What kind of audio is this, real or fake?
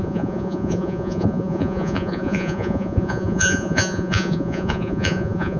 fake